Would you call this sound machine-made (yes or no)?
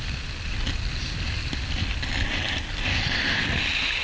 no